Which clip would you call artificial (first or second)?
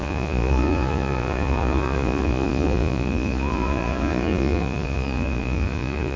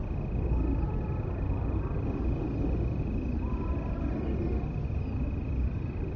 first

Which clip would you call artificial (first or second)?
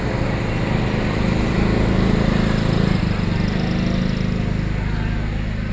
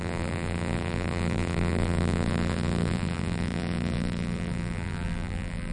second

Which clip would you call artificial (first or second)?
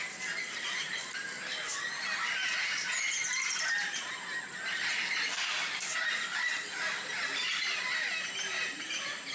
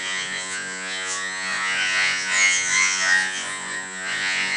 second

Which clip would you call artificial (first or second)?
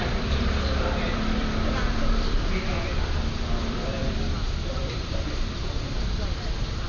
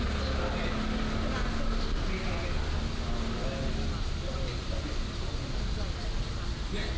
first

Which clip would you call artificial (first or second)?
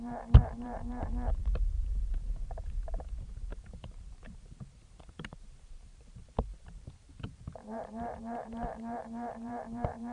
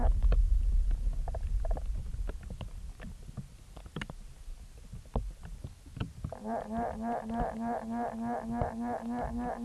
first